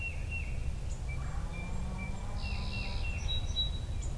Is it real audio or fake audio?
real